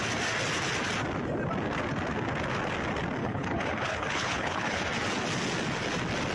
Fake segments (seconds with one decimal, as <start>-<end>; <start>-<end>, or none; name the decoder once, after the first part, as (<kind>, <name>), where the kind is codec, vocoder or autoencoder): 3.2-4.8 (codec, HILCodec)